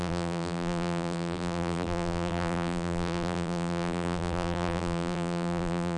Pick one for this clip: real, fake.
fake